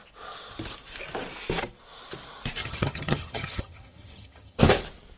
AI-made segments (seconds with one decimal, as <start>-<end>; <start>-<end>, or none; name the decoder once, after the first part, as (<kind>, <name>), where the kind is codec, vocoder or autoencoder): 2.6-4.6 (vocoder, HiFi-GAN)

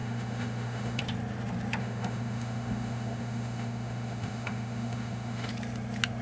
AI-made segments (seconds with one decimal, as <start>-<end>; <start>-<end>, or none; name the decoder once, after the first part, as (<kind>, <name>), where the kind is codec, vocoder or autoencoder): 0.0-1.0 (autoencoder, DAC-VAE); 1.8-5.5

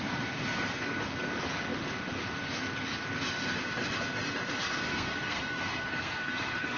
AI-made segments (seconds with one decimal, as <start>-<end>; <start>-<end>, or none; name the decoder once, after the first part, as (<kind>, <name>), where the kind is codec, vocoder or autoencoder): 4.9-6.8 (codec, SNAC)

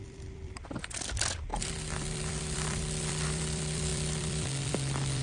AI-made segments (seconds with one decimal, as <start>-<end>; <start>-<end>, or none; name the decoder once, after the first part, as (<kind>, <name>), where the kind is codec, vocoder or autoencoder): 0.0-5.2 (vocoder, BigVGAN v2)